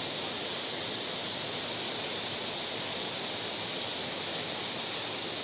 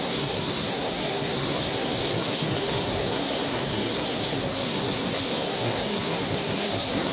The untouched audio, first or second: first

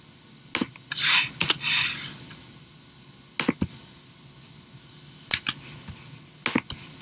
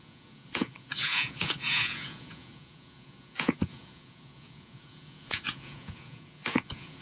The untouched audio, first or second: first